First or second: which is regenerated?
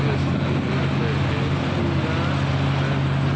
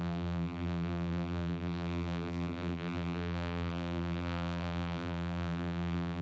second